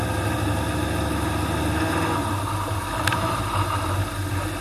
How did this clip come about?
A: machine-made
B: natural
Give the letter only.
B